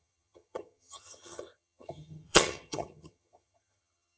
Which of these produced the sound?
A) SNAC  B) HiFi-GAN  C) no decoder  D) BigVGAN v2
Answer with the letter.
B